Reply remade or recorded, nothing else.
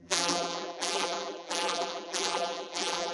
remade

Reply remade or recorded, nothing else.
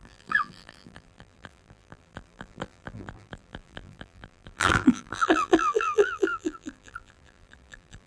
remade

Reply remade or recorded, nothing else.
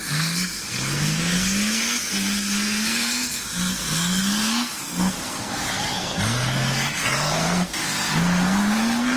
remade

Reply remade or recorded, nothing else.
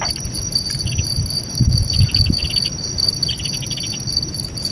recorded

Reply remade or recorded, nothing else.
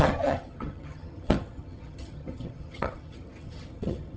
remade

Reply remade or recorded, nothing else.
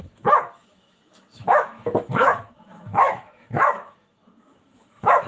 remade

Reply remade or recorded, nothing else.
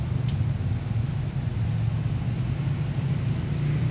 recorded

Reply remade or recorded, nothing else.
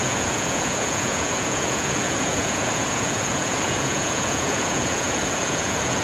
remade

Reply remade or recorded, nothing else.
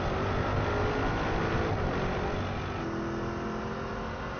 recorded